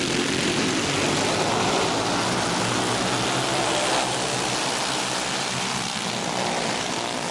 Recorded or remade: recorded